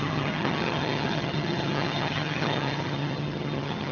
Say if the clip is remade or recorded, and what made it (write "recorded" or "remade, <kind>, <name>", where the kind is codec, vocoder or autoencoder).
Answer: remade, vocoder, HiFi-GAN